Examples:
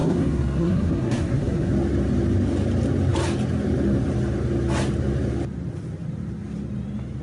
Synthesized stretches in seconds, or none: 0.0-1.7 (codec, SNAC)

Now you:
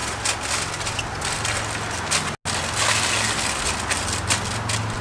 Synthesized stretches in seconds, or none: none

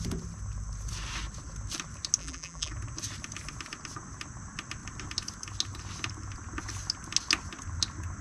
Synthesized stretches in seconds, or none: 2.2-2.7 (vocoder, BigVGAN v2)

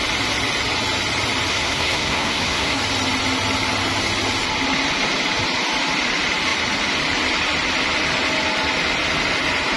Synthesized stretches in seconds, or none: 1.5-2.8 (codec, SNAC)